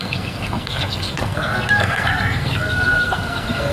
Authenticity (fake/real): fake